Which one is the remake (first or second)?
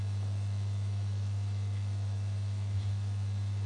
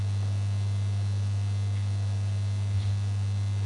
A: first